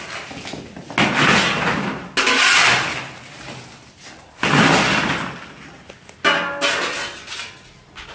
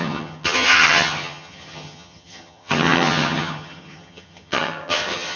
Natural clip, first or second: first